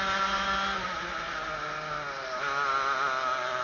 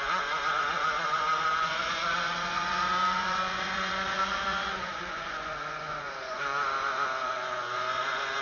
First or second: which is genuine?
first